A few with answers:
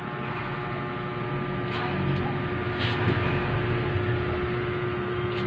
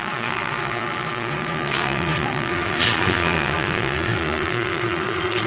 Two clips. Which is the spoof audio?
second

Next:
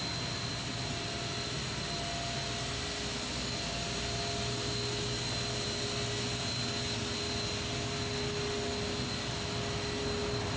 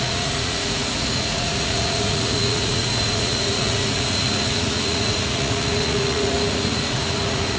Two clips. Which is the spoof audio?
second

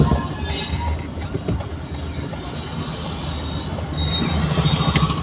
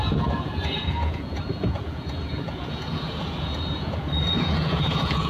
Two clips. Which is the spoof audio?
second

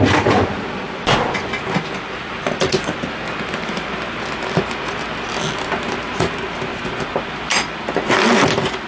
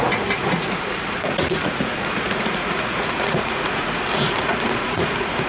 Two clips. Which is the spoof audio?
second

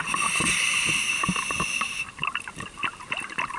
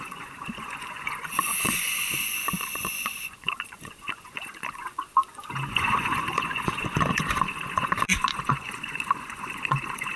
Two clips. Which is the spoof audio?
second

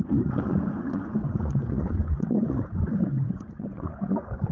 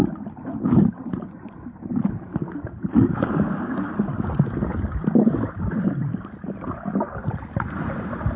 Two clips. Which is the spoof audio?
first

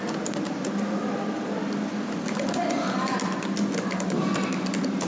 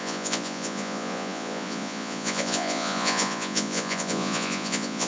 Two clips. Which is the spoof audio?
second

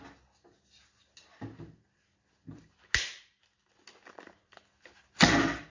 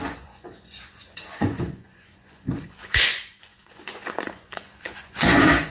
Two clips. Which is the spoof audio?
second